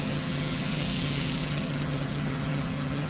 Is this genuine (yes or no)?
no